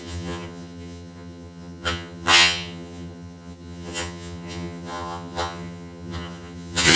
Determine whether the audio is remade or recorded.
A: remade